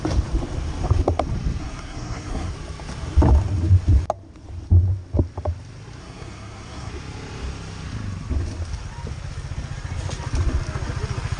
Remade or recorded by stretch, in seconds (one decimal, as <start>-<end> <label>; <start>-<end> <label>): 0.0-1.6 recorded; 1.6-2.5 remade; 2.5-6.0 recorded; 6.0-6.9 remade; 6.9-11.4 recorded